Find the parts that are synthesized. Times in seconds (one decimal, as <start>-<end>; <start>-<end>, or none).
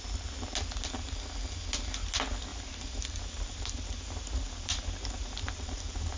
2.5-6.2